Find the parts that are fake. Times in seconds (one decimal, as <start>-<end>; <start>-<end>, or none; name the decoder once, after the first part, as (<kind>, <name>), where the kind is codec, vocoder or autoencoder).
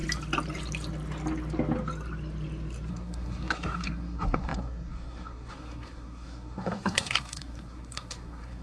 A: 2.9-8.6 (codec, SNAC)